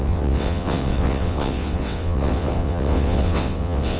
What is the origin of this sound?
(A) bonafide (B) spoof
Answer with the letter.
B